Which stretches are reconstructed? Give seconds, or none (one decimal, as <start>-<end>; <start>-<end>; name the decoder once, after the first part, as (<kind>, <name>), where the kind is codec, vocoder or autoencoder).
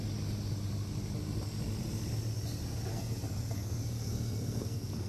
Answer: 2.9-5.1 (codec, SNAC)